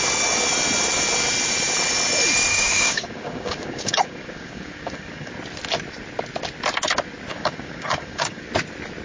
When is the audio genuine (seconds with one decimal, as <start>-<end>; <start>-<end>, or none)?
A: 0.0-2.5; 5.3-7.3; 8.4-9.0